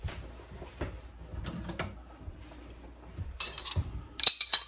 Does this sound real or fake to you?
real